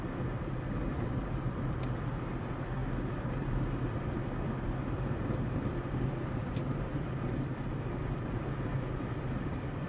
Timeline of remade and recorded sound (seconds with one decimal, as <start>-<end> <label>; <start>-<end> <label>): 0.0-9.9 remade